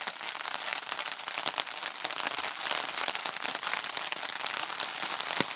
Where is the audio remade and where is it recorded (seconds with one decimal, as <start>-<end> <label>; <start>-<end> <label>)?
0.0-5.6 recorded